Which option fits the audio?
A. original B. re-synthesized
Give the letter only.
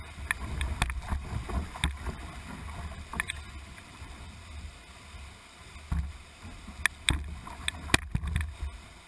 A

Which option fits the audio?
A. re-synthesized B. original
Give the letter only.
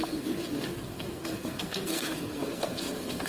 A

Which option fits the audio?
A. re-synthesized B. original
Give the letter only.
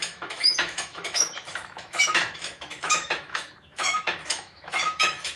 A